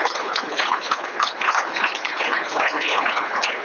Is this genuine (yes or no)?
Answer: no